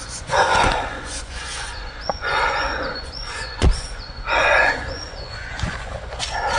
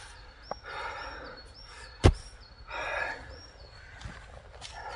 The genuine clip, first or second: second